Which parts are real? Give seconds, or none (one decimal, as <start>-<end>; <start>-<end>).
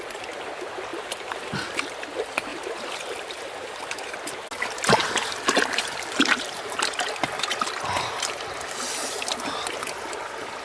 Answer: 0.0-0.9; 1.5-2.5; 3.8-5.0; 7.1-10.6